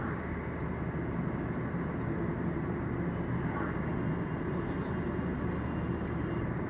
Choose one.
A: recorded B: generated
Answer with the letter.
A